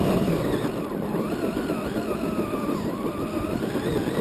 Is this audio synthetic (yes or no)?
yes